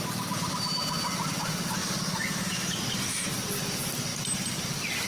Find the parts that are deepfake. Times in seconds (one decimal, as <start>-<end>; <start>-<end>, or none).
1.8-2.8